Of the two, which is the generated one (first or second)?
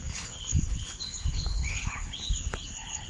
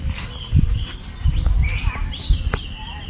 first